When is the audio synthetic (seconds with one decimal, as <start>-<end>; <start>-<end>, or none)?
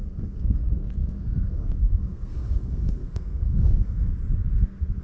0.0-4.1